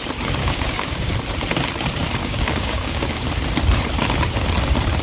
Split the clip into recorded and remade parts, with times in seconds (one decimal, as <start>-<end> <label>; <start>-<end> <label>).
0.0-0.4 recorded; 0.4-1.1 remade; 1.1-2.2 recorded; 2.2-3.3 remade; 3.3-5.0 recorded